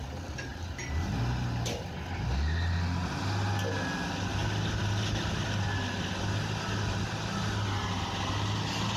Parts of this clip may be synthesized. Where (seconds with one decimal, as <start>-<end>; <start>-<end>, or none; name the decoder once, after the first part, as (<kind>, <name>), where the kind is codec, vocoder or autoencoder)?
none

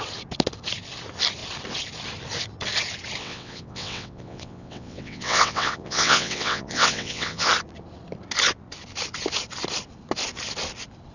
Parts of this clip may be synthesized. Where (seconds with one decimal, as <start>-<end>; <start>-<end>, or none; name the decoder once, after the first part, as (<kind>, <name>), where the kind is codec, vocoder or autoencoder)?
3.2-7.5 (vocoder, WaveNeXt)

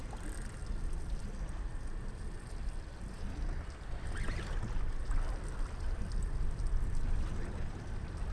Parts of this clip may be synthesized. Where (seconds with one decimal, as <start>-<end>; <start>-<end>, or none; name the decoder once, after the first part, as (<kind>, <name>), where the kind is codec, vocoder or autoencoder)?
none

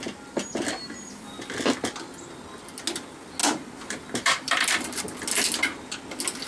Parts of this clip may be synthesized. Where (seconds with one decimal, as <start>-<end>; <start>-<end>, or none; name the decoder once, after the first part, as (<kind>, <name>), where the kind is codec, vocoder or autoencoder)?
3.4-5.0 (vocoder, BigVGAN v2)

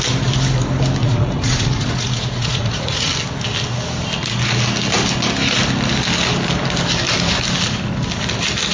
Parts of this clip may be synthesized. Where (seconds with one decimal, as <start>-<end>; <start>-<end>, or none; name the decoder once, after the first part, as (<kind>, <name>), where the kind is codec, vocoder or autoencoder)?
1.0-3.1 (vocoder, Vocos)

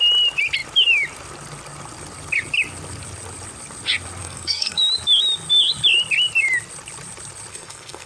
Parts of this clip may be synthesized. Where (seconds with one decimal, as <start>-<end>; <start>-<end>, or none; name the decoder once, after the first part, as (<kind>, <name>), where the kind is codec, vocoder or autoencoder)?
4.2-4.8 (codec, SNAC); 7.5-8.1

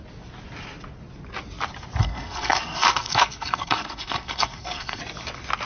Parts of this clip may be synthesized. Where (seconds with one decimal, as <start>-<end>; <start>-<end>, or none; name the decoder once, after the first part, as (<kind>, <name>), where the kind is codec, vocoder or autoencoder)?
2.0-5.0 (codec, SNAC)

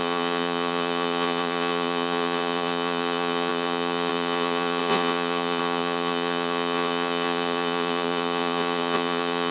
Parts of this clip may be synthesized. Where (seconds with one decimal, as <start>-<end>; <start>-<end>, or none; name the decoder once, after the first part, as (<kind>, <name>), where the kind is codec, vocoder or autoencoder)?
0.0-9.5 (vocoder, Vocos)